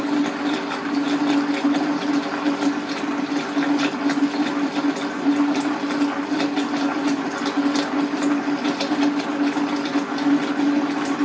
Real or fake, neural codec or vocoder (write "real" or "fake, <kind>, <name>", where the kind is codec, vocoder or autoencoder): real